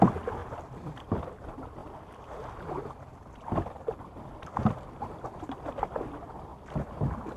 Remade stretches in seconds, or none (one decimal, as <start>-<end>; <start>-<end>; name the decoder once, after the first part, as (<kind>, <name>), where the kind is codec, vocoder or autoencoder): 0.0-1.8 (vocoder, BigVGAN v2); 4.2-6.5